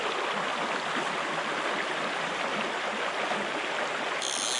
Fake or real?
real